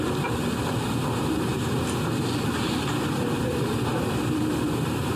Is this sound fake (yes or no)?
yes